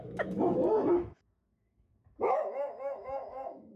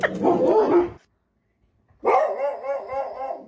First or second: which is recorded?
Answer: second